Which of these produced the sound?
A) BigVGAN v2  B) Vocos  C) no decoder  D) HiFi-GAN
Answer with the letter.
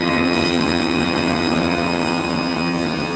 D